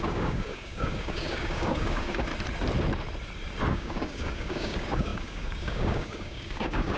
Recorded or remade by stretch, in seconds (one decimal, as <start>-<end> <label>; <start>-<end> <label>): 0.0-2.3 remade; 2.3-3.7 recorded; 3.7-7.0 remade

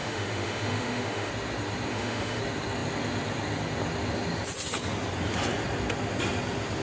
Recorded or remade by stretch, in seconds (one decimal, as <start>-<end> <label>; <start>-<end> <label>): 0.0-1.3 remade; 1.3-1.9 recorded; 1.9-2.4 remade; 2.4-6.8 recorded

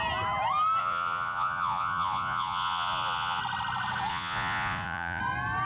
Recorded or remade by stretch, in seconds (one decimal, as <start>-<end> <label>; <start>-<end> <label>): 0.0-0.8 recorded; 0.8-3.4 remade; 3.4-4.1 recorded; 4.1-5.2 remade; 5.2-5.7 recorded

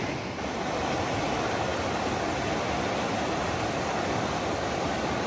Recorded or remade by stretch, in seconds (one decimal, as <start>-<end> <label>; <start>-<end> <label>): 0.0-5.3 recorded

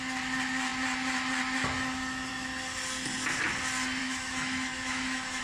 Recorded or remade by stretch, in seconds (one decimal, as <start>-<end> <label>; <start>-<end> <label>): 0.0-4.0 recorded; 4.0-5.4 remade

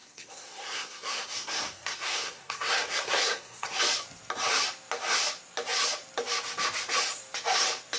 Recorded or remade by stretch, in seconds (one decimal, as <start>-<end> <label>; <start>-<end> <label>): 0.0-3.8 remade; 3.8-8.0 recorded

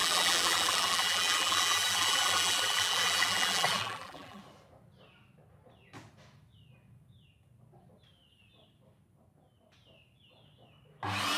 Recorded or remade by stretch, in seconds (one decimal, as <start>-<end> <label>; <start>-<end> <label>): 0.0-4.4 remade; 4.4-11.4 recorded

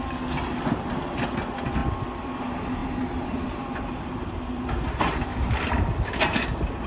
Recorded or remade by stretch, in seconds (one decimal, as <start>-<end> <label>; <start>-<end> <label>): 0.0-1.8 recorded; 1.8-2.4 remade; 2.4-2.8 recorded; 2.8-4.1 remade; 4.1-5.3 recorded; 5.3-6.1 remade; 6.1-6.9 recorded